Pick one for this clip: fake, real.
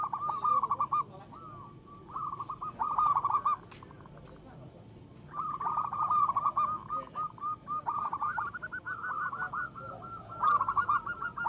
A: real